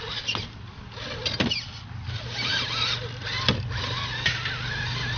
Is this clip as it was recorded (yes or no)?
yes